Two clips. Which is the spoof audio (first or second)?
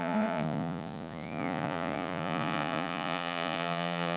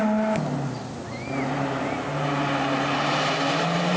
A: first